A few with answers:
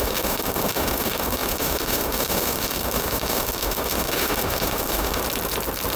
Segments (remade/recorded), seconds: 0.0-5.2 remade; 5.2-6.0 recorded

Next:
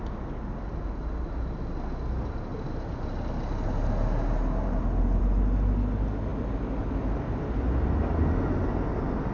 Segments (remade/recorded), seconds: 0.0-9.3 recorded